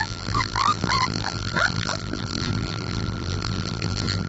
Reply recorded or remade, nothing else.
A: remade